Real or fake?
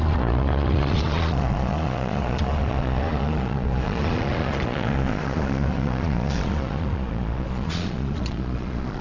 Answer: fake